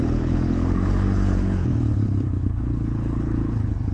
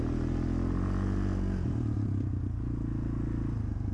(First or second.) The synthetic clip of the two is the first